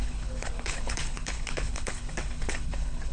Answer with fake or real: fake